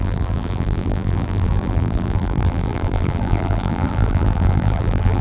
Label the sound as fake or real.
fake